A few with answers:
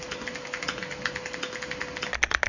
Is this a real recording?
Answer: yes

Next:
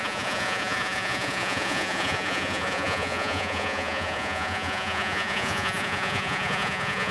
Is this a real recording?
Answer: no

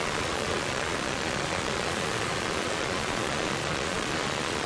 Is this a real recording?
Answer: no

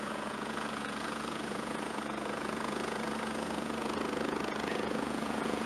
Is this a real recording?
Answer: no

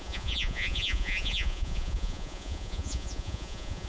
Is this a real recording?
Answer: no